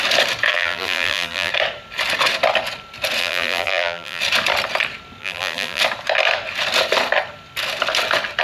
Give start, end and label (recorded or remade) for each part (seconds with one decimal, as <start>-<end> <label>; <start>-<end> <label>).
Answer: 0.0-0.5 recorded; 0.5-1.5 remade; 1.5-3.2 recorded; 3.2-4.2 remade; 4.2-5.2 recorded; 5.2-5.8 remade; 5.8-8.4 recorded